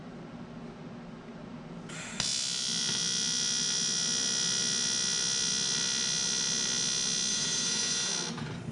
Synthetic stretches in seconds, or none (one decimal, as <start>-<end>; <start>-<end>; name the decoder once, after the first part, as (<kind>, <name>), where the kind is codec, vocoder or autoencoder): 7.3-8.1 (vocoder, Vocos)